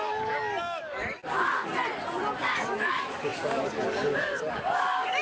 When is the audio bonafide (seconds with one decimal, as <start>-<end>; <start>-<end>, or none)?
1.7-2.4